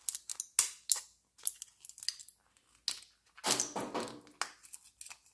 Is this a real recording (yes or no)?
yes